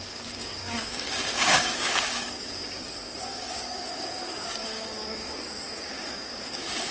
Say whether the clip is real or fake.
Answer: fake